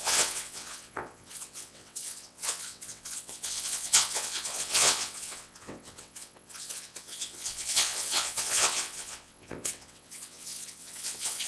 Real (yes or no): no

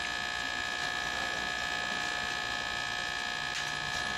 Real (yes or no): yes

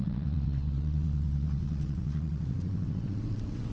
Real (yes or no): no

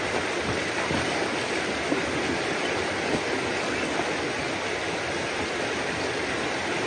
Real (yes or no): yes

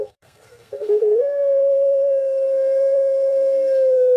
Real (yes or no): no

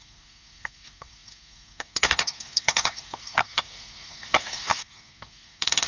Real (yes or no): no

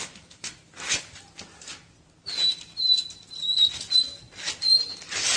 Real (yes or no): yes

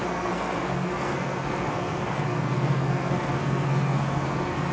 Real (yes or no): no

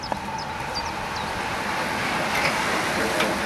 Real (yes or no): yes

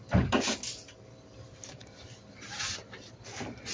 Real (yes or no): yes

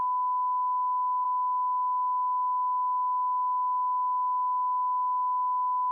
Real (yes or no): no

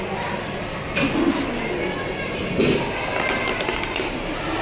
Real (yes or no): yes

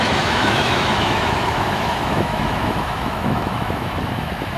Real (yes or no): no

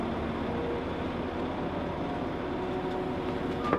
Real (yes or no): yes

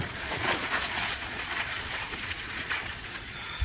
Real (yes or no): no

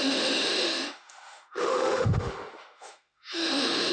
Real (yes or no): no